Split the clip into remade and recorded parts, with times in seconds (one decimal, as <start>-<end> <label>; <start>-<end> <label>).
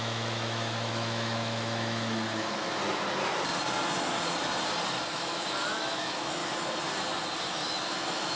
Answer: 0.0-2.8 remade; 2.8-5.1 recorded; 5.1-6.4 remade; 6.4-7.5 recorded; 7.5-8.4 remade